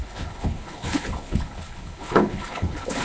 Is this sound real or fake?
fake